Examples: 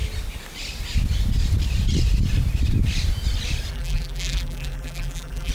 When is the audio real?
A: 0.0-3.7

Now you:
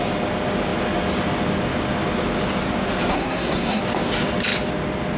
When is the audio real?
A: 0.0-3.1; 3.8-5.2